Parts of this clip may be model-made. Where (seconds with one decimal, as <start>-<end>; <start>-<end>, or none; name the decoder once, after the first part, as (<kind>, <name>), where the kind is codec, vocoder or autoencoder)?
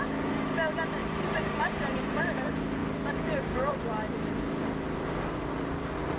1.0-2.2 (vocoder, BigVGAN v2)